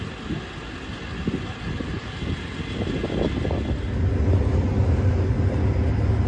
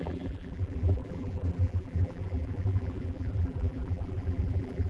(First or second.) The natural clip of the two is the first